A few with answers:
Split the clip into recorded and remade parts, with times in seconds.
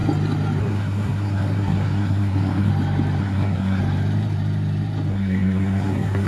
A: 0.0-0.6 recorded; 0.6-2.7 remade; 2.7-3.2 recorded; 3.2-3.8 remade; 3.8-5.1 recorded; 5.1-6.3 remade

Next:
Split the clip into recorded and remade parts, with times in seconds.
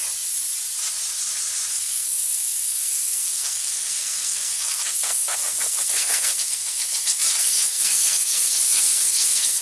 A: 0.0-1.7 recorded; 1.7-9.6 remade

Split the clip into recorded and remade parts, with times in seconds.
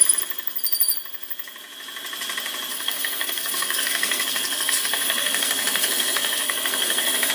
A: 0.0-2.7 recorded; 2.7-7.3 remade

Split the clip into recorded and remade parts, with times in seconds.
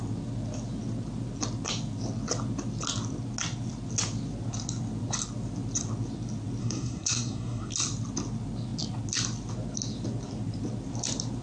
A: 0.0-6.6 recorded; 6.6-7.7 remade; 7.7-11.4 recorded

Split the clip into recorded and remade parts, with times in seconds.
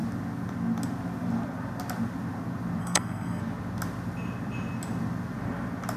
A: 0.0-2.8 recorded; 2.8-3.4 remade; 3.4-6.0 recorded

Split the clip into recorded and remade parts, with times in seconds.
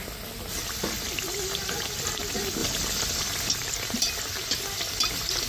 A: 0.0-5.5 recorded